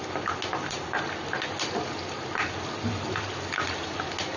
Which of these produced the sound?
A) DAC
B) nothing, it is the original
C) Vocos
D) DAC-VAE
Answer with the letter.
B